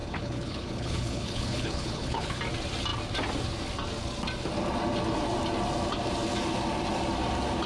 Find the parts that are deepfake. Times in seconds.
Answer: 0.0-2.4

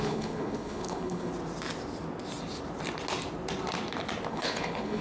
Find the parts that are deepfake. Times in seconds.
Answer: 0.0-1.3; 4.3-5.0

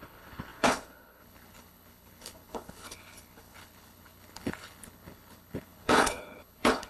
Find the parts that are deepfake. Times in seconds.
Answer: 0.0-6.9

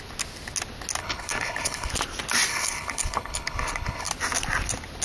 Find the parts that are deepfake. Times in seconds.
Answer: 1.0-1.9; 2.5-4.1

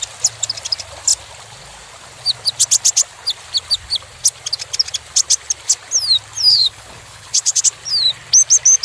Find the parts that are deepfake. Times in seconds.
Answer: 6.5-7.6